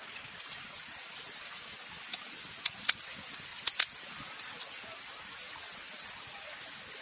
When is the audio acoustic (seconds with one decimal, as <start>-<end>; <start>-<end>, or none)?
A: 0.0-7.0